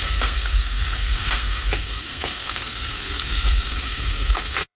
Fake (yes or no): yes